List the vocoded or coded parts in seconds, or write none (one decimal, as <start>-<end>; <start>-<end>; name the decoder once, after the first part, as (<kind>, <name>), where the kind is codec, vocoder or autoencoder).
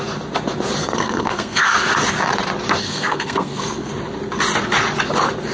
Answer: 0.8-1.6 (codec, SNAC); 2.8-3.9